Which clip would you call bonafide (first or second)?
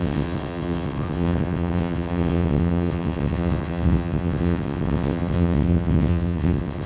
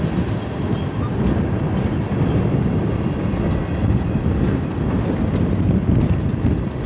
second